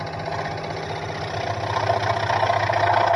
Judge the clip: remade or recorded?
recorded